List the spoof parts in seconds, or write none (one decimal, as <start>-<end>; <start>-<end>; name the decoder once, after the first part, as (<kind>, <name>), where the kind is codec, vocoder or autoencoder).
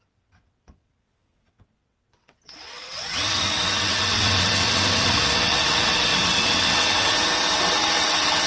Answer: 0.0-8.5 (vocoder, WaveNeXt)